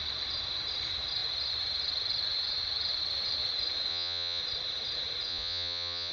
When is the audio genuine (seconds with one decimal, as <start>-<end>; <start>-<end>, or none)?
0.0-3.9; 4.4-5.3